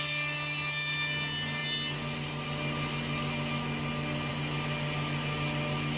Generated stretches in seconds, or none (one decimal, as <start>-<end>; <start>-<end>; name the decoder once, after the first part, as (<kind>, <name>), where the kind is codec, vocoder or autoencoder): none